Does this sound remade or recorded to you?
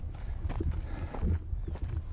recorded